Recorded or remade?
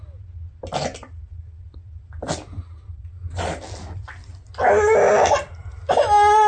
recorded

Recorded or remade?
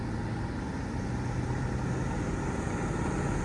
recorded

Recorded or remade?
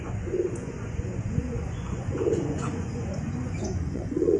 remade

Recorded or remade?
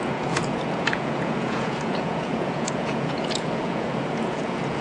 remade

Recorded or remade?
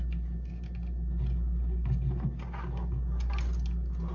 recorded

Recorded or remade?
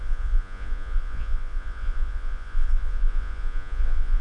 remade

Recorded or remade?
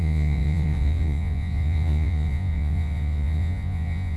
remade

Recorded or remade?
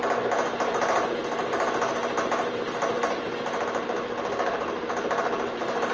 recorded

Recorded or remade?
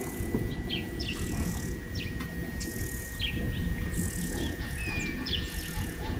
remade